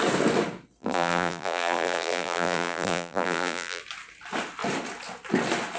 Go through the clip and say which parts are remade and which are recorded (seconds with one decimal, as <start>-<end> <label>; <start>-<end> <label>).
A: 0.0-0.8 recorded; 0.8-3.8 remade; 3.8-5.8 recorded